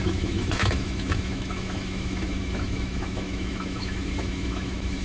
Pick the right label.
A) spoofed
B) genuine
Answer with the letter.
A